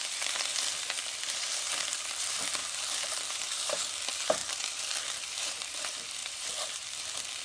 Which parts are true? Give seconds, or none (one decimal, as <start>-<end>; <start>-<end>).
none